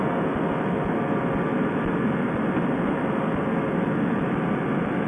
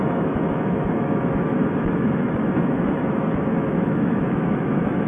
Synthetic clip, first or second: second